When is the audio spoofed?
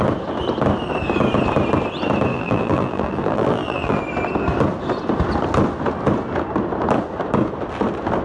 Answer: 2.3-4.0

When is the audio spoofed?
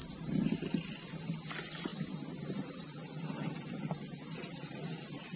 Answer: none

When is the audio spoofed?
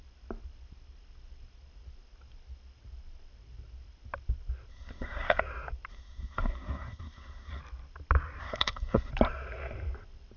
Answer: 4.7-5.4; 5.9-7.6; 8.4-9.1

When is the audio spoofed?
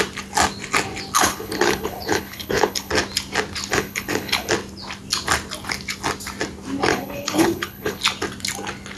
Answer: 1.2-2.9; 3.7-4.5; 6.9-8.0